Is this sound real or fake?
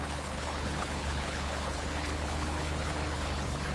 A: fake